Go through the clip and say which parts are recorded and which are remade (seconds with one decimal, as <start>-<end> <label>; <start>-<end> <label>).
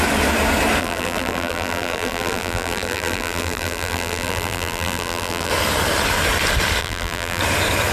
0.0-0.8 recorded; 0.8-5.5 remade; 5.5-6.8 recorded; 6.8-7.4 remade; 7.4-7.9 recorded